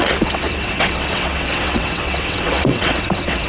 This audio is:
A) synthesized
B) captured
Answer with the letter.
A